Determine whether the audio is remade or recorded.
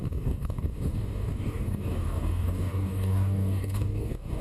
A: remade